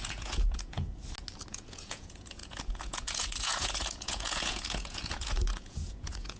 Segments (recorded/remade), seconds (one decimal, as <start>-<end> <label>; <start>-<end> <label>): 0.0-0.9 remade; 0.9-1.5 recorded; 1.5-6.4 remade